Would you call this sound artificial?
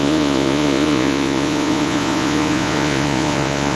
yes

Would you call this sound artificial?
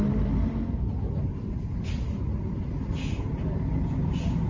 no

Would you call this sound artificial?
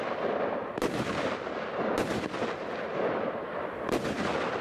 no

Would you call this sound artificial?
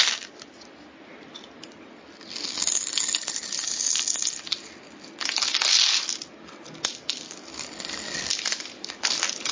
no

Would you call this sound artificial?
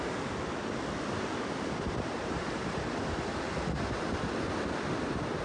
no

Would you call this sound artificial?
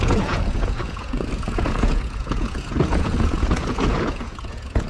yes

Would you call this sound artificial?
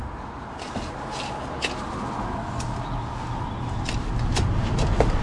no